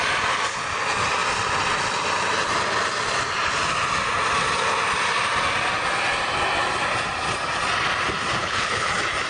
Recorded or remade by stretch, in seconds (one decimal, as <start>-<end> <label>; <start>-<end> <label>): 0.0-8.4 recorded; 8.4-8.9 remade; 8.9-9.3 recorded